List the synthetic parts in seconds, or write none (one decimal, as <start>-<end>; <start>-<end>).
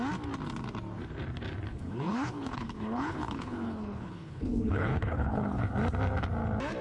1.7-5.6